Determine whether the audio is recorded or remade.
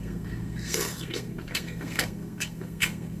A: remade